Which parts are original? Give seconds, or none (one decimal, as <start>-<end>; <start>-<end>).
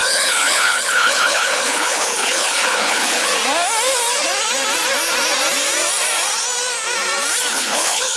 3.3-7.5